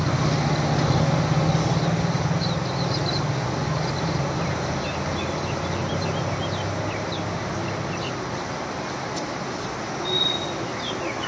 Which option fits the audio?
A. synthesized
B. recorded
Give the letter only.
B